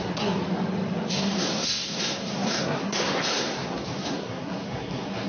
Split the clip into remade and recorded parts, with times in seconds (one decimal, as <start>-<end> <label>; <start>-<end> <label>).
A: 0.0-0.4 remade; 0.4-1.1 recorded; 1.1-5.3 remade